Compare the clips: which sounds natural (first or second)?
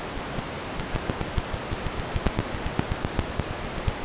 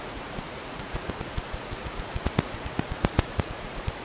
first